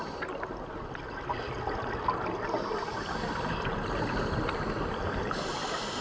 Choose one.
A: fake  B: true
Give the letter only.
B